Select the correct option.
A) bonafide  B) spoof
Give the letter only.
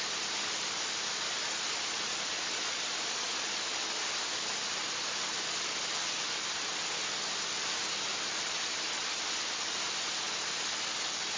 A